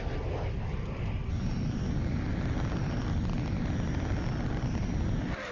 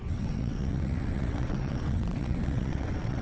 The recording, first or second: first